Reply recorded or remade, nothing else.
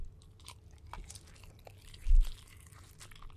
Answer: recorded